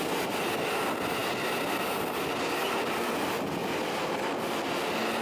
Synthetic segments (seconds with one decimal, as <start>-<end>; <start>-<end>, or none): 3.6-4.4